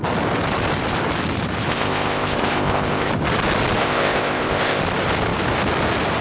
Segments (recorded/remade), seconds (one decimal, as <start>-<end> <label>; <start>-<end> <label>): 0.0-1.7 recorded; 1.7-3.1 remade; 3.1-3.8 recorded; 3.8-4.8 remade; 4.8-6.2 recorded